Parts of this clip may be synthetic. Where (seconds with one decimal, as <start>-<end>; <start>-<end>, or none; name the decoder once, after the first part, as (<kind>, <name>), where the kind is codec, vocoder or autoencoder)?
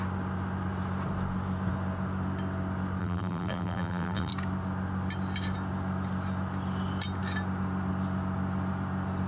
3.0-4.3 (vocoder, BigVGAN v2)